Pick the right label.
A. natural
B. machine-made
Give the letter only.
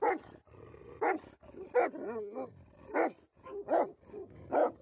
A